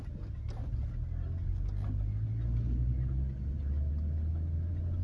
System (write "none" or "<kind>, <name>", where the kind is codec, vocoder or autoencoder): none